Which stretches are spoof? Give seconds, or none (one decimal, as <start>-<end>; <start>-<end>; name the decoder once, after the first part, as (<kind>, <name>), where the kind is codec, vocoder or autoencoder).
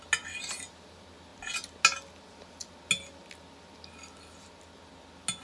none